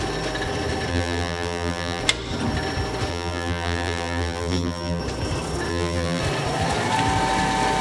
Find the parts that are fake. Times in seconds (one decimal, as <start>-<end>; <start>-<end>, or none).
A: 0.9-2.0; 3.1-5.0; 5.7-6.2